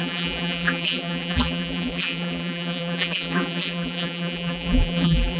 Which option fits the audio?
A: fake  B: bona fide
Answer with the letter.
A